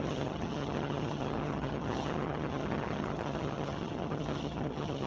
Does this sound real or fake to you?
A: fake